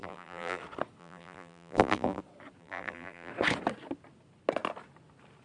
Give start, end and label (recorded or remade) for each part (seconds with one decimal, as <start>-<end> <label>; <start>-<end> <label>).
0.0-0.6 remade; 0.6-1.0 recorded; 1.0-2.2 remade; 2.2-2.6 recorded; 2.6-3.3 remade; 3.3-5.4 recorded